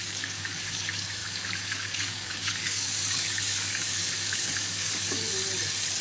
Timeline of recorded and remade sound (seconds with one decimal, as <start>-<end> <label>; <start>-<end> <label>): 0.0-5.3 remade; 5.3-6.0 recorded

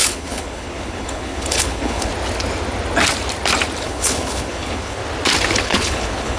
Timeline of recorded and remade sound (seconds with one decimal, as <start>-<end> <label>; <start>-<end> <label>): 0.0-2.1 remade; 2.1-3.8 recorded; 3.8-5.0 remade; 5.0-5.6 recorded; 5.6-6.4 remade

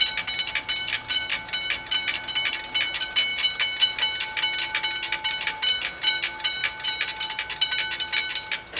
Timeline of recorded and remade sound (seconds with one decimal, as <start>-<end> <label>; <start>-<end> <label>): 0.0-8.8 recorded